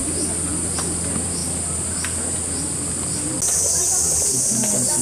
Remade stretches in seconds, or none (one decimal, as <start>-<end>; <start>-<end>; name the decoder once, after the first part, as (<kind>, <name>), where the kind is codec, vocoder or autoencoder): none